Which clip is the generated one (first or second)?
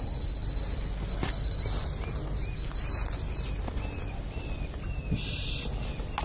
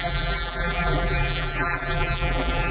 second